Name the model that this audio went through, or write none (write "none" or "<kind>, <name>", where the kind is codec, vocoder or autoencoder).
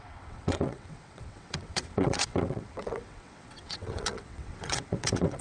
vocoder, WaveNeXt